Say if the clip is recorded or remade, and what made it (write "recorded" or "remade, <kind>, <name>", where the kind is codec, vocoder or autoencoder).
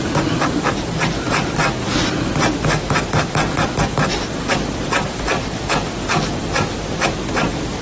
recorded